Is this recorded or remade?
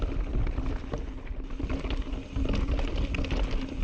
recorded